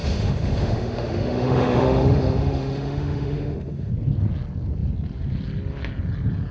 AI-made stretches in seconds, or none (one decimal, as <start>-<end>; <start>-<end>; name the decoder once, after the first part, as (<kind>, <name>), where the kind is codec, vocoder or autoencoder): 0.0-3.9 (autoencoder, DAC-VAE)